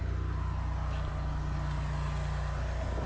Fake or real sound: real